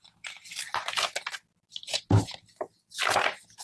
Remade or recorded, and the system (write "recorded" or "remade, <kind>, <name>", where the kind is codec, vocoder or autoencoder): recorded